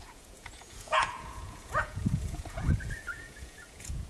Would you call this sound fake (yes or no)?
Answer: yes